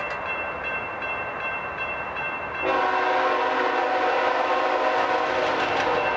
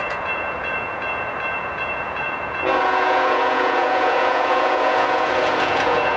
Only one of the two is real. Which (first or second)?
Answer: first